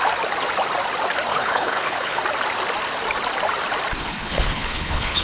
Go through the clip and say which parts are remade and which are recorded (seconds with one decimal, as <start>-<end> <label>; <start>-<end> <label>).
0.0-1.3 recorded; 1.3-2.2 remade; 2.2-4.0 recorded; 4.0-5.2 remade